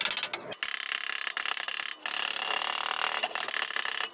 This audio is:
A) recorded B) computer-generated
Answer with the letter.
A